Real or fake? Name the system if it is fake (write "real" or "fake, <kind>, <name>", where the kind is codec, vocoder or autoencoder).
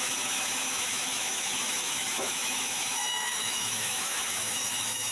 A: fake, autoencoder, DAC-VAE